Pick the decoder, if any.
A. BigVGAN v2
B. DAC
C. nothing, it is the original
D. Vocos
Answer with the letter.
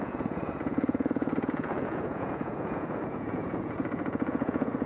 D